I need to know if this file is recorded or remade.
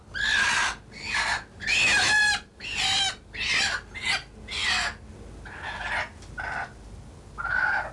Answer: recorded